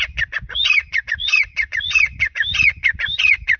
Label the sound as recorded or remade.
remade